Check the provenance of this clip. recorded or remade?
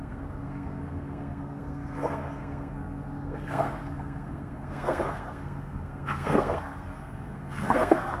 remade